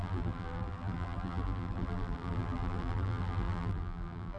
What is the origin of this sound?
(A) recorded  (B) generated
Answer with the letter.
B